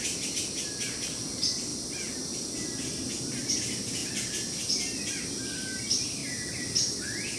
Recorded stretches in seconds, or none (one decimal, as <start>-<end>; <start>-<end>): 0.0-7.4